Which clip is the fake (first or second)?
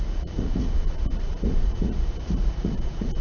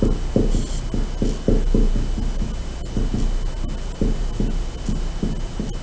first